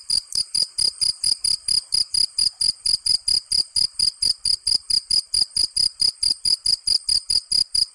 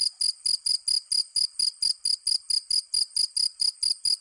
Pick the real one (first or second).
second